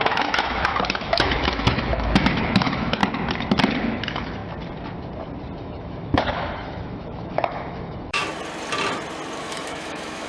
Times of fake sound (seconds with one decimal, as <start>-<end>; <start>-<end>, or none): 0.0-3.0; 3.8-4.4; 5.6-8.2; 9.4-10.3